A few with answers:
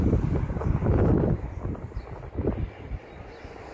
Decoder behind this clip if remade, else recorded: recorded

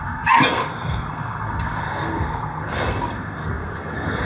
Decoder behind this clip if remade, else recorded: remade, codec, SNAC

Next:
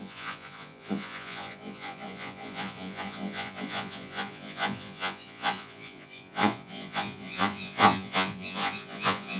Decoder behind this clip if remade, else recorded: remade, vocoder, Vocos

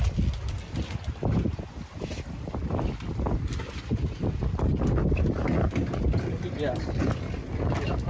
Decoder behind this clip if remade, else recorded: recorded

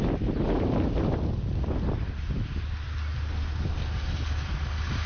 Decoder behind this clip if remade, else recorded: recorded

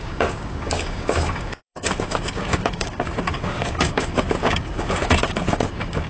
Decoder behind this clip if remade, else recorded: remade, codec, DAC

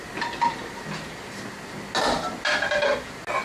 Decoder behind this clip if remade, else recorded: recorded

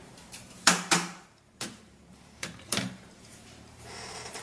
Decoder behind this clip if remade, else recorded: remade, vocoder, BigVGAN v2